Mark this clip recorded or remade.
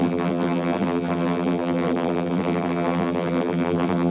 remade